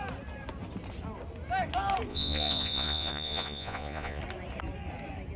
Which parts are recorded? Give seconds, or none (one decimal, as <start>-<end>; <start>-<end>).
0.0-2.1; 4.2-5.4